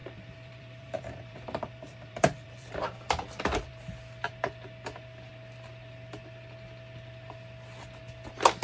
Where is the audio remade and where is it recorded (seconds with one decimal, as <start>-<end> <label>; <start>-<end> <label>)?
0.0-3.7 remade; 3.7-8.6 recorded